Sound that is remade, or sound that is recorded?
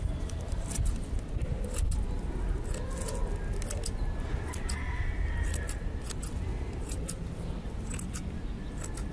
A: recorded